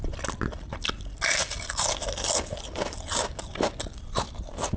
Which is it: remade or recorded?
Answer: recorded